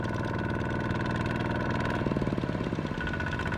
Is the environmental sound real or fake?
real